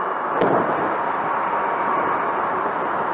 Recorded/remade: recorded